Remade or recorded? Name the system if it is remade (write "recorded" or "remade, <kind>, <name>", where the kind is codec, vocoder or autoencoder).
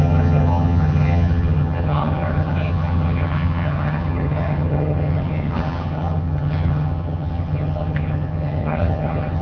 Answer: remade, vocoder, HiFi-GAN